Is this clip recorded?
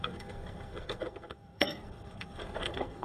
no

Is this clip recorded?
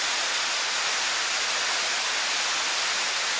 yes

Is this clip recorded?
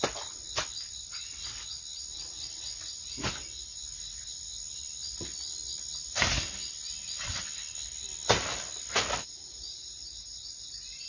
yes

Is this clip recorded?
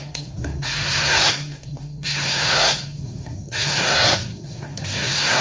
no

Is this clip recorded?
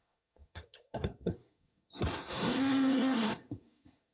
no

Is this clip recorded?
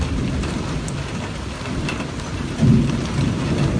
yes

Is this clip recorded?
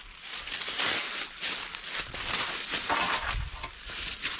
yes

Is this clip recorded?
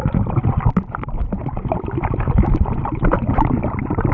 no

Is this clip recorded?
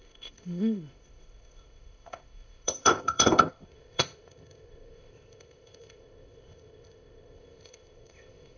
no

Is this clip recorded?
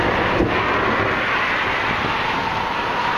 yes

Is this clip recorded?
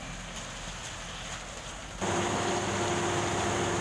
yes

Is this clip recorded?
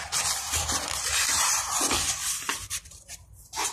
no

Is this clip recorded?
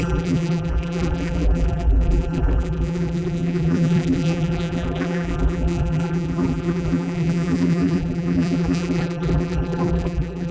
no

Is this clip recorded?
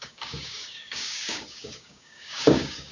no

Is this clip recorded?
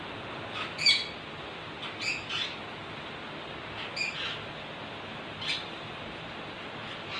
yes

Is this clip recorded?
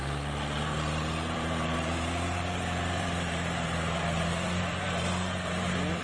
no